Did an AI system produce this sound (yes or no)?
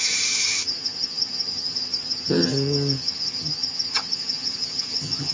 yes